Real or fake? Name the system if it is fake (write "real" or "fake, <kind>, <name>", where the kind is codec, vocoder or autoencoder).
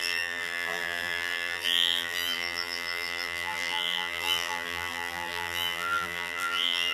fake, vocoder, BigVGAN v2